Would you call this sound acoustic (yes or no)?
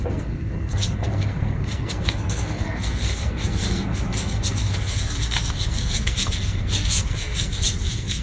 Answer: no